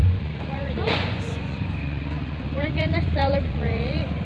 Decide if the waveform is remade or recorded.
remade